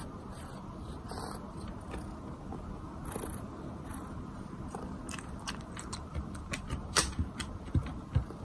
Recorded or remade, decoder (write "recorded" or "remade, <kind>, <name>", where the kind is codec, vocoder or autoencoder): recorded